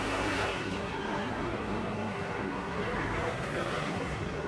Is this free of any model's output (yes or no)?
no